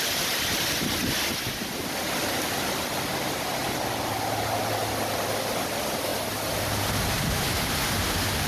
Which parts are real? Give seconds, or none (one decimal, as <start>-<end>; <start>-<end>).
0.0-8.5

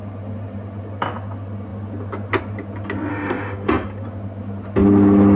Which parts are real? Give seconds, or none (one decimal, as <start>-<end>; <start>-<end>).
0.0-3.1; 3.7-5.4

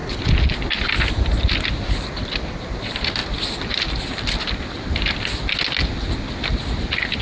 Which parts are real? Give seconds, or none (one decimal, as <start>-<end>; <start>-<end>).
0.0-7.2